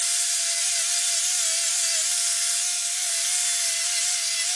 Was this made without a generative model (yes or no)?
yes